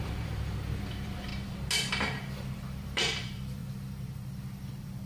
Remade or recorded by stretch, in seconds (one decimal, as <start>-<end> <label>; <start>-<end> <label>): 0.0-1.3 remade; 1.3-1.9 recorded; 1.9-5.1 remade